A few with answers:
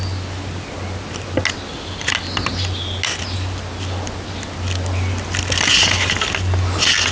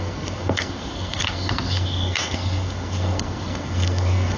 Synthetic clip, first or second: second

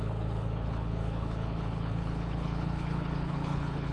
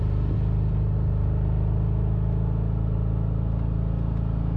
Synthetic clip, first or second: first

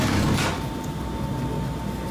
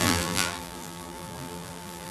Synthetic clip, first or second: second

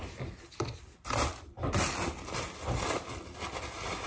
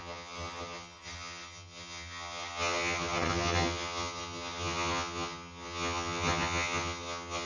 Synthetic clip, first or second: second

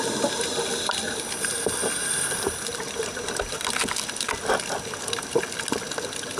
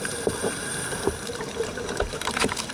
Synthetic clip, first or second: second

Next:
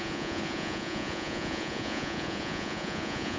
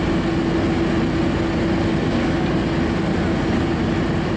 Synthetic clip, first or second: first